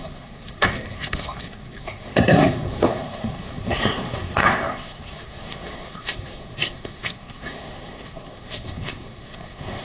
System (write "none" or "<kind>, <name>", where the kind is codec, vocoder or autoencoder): codec, SNAC